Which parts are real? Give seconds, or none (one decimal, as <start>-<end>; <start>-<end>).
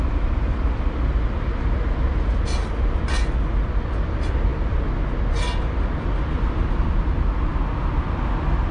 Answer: 0.0-8.7